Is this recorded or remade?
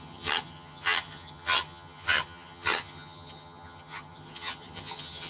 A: remade